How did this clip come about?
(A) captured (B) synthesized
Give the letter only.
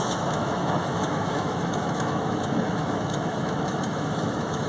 B